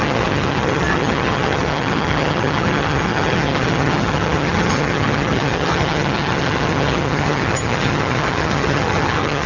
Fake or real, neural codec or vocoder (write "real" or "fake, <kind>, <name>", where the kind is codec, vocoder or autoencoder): fake, vocoder, HiFi-GAN